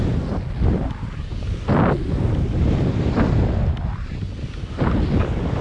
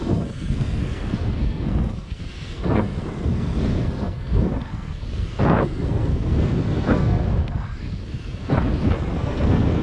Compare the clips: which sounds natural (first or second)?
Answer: first